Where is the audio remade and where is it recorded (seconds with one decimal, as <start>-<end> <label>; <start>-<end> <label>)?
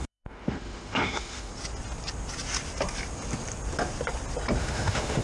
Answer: 0.0-1.5 remade; 1.5-4.6 recorded; 4.6-5.2 remade